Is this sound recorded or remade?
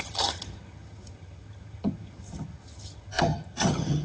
remade